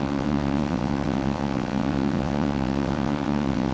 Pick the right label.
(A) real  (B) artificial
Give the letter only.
B